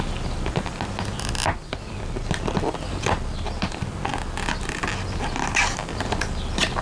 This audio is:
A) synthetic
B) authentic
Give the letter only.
B